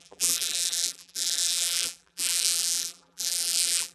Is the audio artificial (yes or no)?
yes